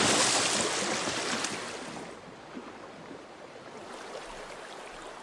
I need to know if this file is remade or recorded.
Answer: recorded